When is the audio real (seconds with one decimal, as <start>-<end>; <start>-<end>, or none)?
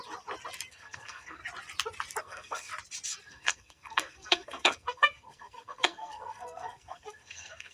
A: 0.0-0.7; 1.4-2.2; 2.7-3.2